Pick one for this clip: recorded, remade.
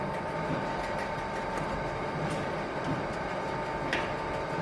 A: recorded